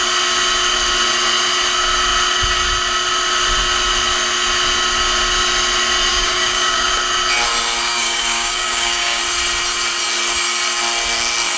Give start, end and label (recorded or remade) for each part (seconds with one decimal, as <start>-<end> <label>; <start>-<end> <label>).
0.0-6.1 recorded; 6.1-6.9 remade; 6.9-7.9 recorded; 7.9-9.2 remade; 9.2-11.6 recorded